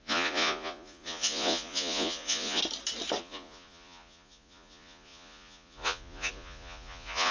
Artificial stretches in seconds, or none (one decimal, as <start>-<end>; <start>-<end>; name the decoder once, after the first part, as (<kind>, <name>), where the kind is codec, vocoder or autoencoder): 0.0-2.6 (vocoder, Vocos); 3.2-7.3